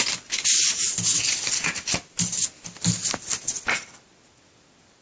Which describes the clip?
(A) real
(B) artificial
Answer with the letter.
A